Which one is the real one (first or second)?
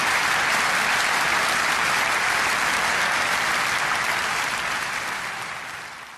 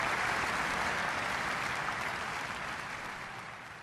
first